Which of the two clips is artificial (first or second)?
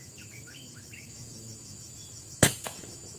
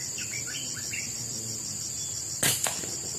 first